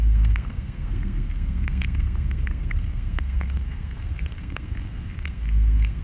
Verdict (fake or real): fake